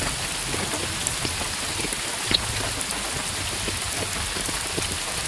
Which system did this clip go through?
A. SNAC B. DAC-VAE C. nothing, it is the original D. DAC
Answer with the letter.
C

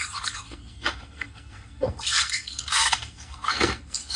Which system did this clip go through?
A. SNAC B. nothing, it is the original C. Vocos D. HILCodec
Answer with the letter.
A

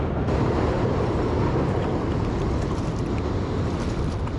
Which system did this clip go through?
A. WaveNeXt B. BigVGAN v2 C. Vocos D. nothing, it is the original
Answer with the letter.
D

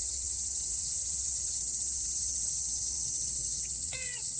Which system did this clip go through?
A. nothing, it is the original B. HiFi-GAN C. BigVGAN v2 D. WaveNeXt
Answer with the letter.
D